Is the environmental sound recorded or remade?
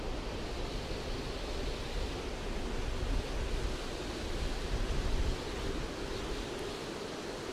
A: recorded